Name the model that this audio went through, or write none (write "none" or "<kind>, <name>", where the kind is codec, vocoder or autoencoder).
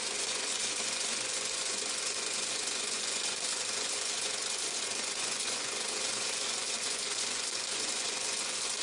vocoder, Vocos